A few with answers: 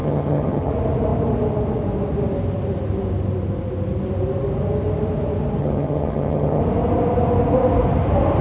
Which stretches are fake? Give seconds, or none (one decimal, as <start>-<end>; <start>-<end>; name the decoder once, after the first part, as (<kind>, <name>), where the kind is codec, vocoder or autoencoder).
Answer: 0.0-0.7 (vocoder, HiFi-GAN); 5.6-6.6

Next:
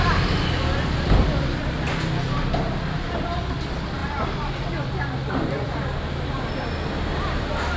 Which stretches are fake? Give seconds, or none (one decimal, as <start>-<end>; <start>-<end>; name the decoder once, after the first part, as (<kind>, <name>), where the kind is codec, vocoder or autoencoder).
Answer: none

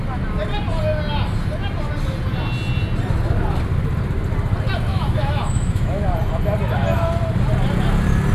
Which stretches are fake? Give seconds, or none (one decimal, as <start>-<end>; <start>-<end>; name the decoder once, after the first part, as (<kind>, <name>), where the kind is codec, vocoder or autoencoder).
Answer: 4.9-6.0 (autoencoder, DAC-VAE)

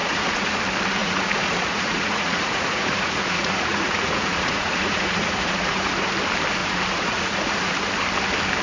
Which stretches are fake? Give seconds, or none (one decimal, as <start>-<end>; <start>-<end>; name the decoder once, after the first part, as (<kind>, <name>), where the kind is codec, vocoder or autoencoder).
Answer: 0.0-0.6 (vocoder, Vocos); 1.0-5.9; 6.6-7.7

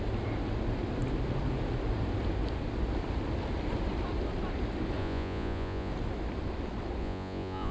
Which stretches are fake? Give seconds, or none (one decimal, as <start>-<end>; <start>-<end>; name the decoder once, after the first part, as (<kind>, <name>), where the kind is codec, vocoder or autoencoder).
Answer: 5.0-5.9 (vocoder, Vocos); 7.0-7.7

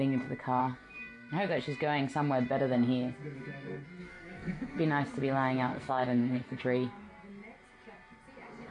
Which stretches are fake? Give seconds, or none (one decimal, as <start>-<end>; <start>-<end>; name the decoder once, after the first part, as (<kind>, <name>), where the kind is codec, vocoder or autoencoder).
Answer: 0.6-1.3 (codec, SNAC); 4.0-4.8; 5.7-6.6

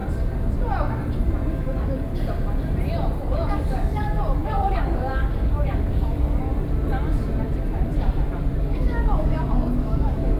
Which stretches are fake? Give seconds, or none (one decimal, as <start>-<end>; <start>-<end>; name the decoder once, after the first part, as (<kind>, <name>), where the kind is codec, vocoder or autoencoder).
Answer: 1.5-2.1 (codec, DAC); 3.2-6.5; 8.6-10.4

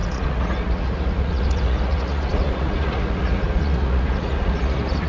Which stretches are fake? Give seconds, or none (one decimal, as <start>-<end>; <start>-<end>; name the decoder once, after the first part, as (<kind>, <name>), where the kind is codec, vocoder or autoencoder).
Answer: 0.0-5.1 (vocoder, Vocos)